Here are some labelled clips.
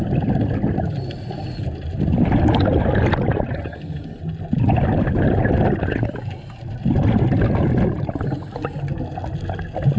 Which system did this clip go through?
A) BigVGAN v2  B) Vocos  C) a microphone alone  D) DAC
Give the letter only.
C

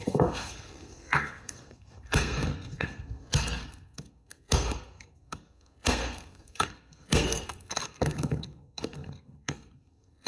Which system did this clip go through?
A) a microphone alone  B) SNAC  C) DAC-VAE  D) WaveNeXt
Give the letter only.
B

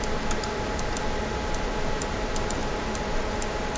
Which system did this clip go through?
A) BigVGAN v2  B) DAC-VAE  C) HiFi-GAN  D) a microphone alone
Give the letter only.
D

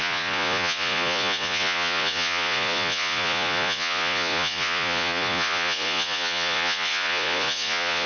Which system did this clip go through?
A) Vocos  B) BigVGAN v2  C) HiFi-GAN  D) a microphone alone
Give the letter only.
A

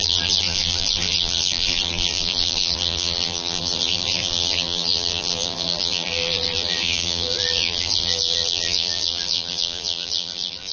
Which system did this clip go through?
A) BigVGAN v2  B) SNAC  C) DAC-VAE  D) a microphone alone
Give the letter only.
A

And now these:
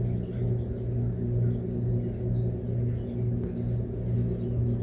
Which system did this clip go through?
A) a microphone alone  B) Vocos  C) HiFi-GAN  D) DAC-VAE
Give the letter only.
A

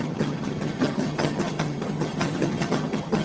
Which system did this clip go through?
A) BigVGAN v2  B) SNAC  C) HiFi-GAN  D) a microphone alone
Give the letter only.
C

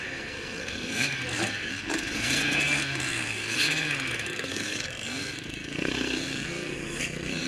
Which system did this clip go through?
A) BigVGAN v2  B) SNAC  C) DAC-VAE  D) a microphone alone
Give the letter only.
B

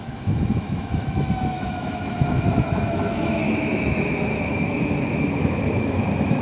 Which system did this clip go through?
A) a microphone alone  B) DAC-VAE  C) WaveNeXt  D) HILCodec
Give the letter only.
B